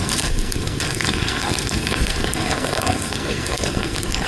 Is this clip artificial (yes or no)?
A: yes